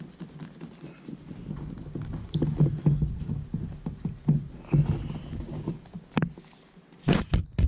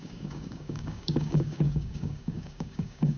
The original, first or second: first